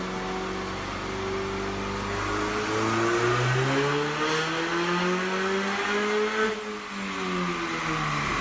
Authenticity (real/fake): real